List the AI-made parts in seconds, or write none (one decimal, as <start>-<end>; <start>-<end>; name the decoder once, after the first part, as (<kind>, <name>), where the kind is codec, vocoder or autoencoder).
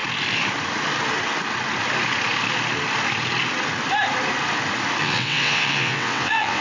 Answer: 5.0-6.6 (vocoder, WaveNeXt)